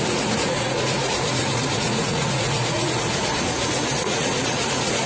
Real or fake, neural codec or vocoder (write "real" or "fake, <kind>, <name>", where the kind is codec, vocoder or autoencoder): fake, vocoder, Vocos